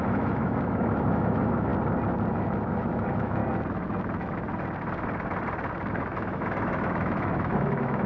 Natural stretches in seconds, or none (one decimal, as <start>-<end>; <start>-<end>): 1.7-2.4; 3.4-5.9